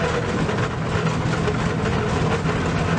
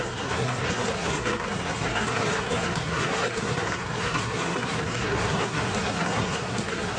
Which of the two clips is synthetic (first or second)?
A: second